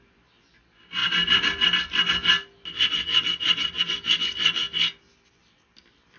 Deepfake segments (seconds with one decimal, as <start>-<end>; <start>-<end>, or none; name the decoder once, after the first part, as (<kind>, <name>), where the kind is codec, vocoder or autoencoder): none